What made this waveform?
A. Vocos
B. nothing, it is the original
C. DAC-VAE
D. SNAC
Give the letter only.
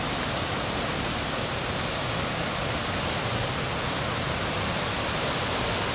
B